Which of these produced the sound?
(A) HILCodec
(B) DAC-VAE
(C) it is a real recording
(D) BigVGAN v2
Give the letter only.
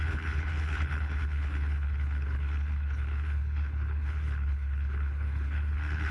A